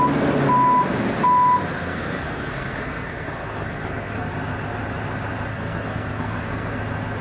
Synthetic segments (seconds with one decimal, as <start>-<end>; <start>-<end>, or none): 1.8-4.3; 5.5-6.8